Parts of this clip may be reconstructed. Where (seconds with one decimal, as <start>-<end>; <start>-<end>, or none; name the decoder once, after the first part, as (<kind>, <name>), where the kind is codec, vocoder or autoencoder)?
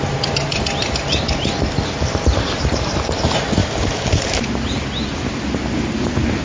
none